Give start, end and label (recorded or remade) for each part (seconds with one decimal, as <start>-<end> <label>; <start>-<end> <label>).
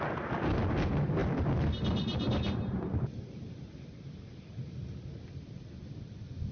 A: 0.0-1.2 recorded; 1.2-4.0 remade; 4.0-6.5 recorded